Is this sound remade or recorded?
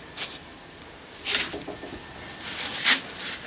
recorded